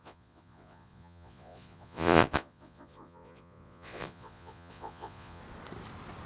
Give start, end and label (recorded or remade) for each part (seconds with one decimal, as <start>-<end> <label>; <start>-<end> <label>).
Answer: 0.0-5.4 remade; 5.4-6.3 recorded